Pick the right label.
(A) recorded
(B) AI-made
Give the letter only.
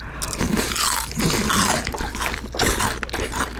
A